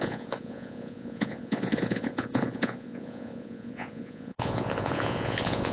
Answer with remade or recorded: remade